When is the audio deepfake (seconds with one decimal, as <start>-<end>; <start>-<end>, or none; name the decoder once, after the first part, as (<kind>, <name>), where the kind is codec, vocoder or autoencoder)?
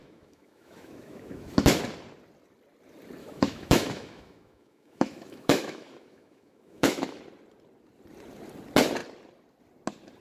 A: 0.0-1.8 (autoencoder, DAC-VAE); 3.2-7.2